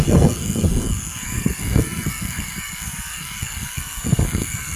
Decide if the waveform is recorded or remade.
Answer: remade